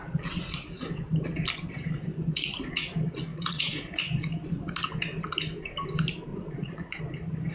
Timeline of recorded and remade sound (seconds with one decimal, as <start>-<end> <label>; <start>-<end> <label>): 0.0-2.1 recorded; 2.1-2.6 remade; 2.6-3.3 recorded; 3.3-3.9 remade; 3.9-6.3 recorded; 6.3-7.0 remade; 7.0-7.5 recorded